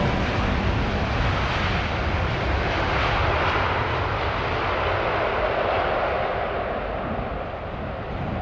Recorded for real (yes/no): yes